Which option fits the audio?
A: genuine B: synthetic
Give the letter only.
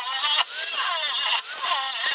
A